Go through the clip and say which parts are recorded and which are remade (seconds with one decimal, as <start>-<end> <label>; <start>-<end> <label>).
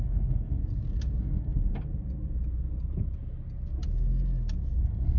0.0-0.6 remade; 0.6-1.2 recorded; 1.2-1.7 remade; 1.7-4.8 recorded; 4.8-5.2 remade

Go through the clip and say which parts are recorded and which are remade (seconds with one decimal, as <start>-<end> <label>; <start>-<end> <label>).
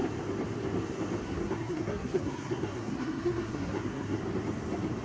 0.0-1.2 recorded; 1.2-4.2 remade; 4.2-5.0 recorded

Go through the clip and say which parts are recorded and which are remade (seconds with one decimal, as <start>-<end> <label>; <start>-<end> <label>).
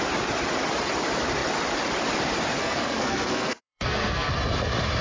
0.0-2.6 recorded; 2.6-4.3 remade; 4.3-5.0 recorded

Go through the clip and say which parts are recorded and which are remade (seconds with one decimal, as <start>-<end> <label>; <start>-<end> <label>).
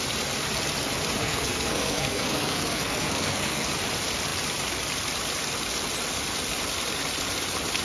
0.0-1.2 recorded; 1.2-3.7 remade; 3.7-7.8 recorded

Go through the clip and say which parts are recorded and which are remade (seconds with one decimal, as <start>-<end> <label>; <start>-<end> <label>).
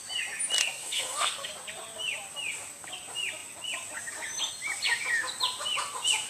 0.0-0.6 recorded; 0.6-1.5 remade; 1.5-6.3 recorded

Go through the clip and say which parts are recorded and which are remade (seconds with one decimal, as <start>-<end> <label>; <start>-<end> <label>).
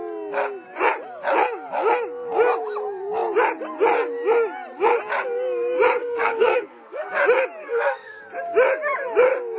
0.0-6.0 recorded; 6.0-7.1 remade; 7.1-7.6 recorded; 7.6-8.2 remade; 8.2-9.6 recorded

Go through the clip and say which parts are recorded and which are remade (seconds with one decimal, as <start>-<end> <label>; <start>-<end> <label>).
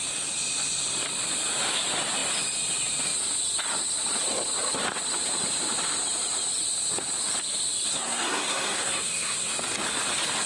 0.0-7.9 recorded; 7.9-9.5 remade; 9.5-10.5 recorded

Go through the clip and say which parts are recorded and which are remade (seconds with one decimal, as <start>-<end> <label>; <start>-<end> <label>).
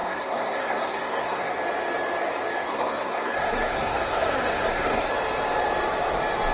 0.0-1.5 remade; 1.5-2.7 recorded; 2.7-5.1 remade; 5.1-6.5 recorded